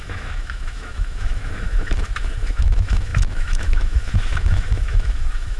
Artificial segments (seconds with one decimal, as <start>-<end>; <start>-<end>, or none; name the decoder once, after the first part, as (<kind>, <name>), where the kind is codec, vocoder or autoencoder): 0.0-5.6 (autoencoder, DAC-VAE)